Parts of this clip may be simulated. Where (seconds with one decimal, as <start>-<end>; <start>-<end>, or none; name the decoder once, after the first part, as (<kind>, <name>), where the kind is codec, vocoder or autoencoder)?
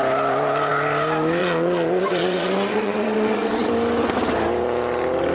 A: 1.4-3.7 (vocoder, Vocos)